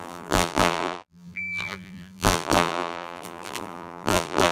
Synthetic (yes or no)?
yes